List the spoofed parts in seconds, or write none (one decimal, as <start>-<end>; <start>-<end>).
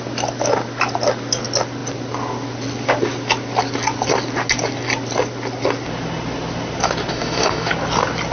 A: 7.1-7.7